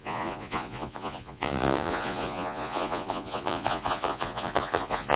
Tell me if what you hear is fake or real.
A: fake